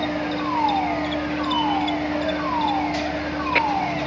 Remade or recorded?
recorded